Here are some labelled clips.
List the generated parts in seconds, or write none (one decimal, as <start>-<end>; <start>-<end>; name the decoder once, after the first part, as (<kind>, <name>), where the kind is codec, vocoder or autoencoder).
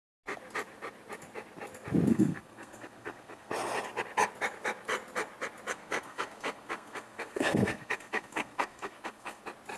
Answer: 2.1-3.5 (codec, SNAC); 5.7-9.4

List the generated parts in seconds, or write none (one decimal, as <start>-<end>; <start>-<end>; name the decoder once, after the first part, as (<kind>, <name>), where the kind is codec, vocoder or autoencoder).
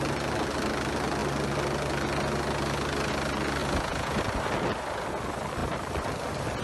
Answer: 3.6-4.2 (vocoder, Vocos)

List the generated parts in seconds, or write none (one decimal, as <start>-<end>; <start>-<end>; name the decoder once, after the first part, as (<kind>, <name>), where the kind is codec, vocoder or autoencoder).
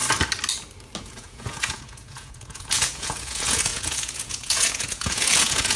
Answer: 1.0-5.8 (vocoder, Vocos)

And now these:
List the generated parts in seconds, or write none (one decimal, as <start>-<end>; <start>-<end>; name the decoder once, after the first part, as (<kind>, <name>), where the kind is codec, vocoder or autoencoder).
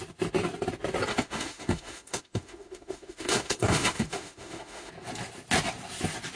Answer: 1.1-4.9 (autoencoder, DAC-VAE)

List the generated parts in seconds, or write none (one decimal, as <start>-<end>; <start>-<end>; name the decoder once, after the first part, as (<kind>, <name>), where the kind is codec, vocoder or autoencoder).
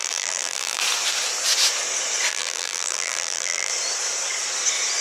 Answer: 0.0-0.8 (vocoder, BigVGAN v2); 2.3-3.7